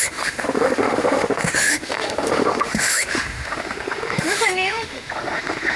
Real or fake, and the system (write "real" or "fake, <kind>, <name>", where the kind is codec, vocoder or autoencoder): fake, autoencoder, DAC-VAE